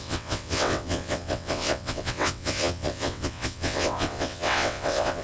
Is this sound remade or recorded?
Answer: remade